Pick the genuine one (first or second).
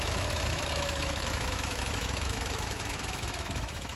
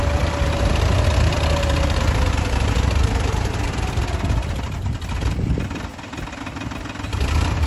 second